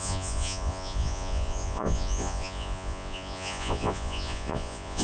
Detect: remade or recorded remade